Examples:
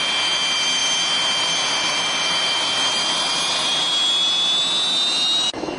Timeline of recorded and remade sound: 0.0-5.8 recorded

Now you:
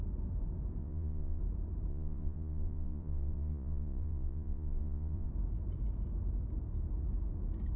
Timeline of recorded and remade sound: 0.0-0.8 recorded; 0.8-1.4 remade; 1.4-1.9 recorded; 1.9-5.3 remade; 5.3-7.8 recorded

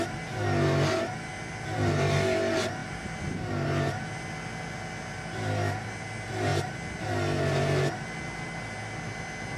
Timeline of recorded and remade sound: 0.0-9.6 recorded

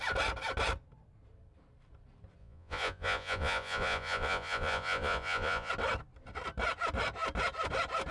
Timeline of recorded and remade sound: 0.0-2.4 recorded; 2.4-5.7 remade; 5.7-8.1 recorded